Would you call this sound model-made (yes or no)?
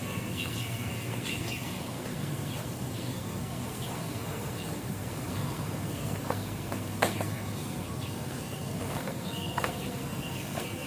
yes